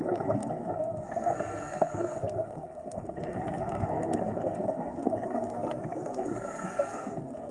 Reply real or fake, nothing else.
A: fake